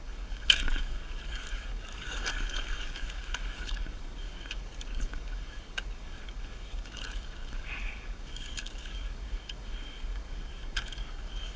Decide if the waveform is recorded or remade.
remade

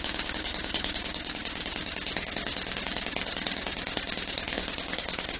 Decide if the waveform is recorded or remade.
remade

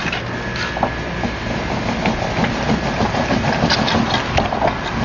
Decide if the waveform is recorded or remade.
recorded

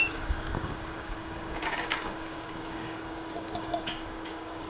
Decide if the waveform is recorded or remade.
remade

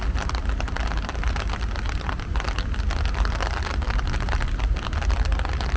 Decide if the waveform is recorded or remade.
recorded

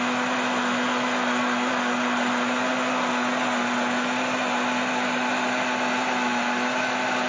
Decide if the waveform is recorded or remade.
recorded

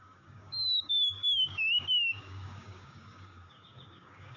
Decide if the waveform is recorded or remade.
remade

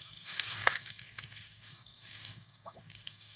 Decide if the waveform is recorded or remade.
remade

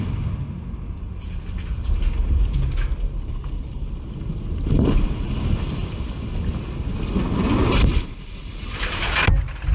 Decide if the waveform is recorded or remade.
recorded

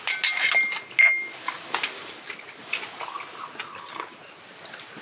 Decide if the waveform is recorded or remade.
recorded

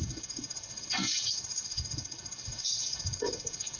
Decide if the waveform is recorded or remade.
remade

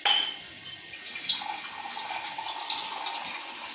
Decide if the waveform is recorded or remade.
recorded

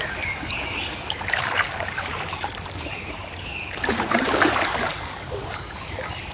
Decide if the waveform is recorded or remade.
remade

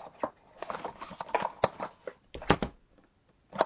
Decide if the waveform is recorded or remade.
recorded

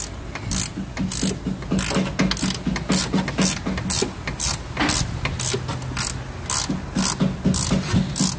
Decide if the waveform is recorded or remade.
recorded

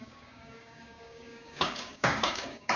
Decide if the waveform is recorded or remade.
remade